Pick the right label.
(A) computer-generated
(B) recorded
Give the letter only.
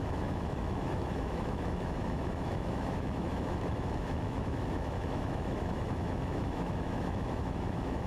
A